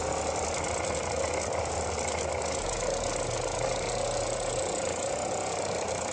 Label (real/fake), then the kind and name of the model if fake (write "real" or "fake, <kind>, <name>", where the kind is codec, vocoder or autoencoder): real